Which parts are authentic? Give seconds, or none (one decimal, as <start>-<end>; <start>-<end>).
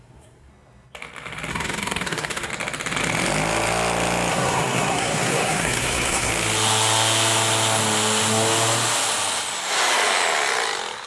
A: 0.5-1.5; 2.5-4.3; 6.3-11.1